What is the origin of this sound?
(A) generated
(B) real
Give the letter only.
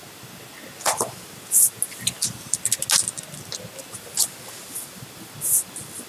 B